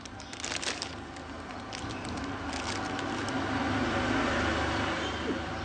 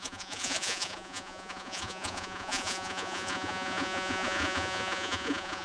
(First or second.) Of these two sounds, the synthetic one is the second